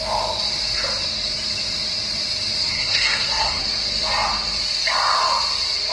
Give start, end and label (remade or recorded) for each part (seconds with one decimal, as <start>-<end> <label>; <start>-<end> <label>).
0.0-2.7 recorded; 2.7-3.6 remade; 3.6-5.9 recorded